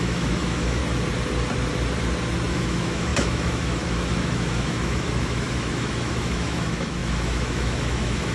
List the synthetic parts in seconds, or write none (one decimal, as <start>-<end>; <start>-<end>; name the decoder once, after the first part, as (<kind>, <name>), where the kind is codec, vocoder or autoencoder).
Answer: 0.0-0.8 (autoencoder, DAC-VAE); 2.5-8.3